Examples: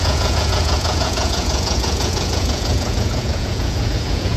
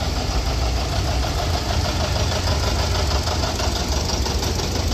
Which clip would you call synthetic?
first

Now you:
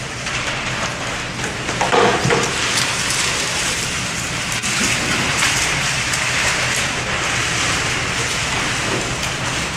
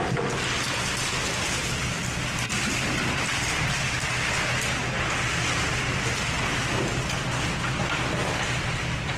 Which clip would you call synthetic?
first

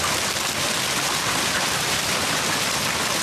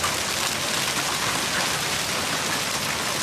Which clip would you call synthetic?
first